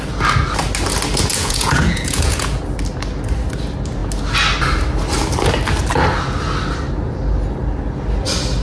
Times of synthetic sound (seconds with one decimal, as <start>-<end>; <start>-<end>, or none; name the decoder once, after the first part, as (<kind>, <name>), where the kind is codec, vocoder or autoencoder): 1.3-2.6 (vocoder, Vocos)